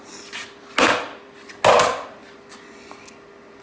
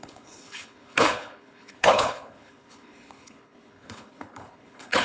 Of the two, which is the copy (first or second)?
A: second